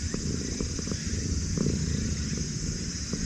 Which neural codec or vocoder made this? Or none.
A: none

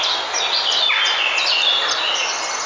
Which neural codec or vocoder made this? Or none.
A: none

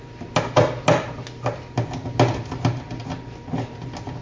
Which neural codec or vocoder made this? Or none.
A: none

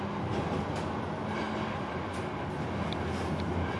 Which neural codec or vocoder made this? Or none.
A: none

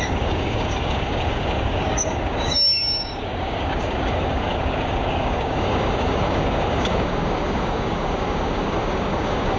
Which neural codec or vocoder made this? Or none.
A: codec, DAC